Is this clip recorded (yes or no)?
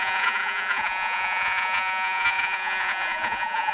no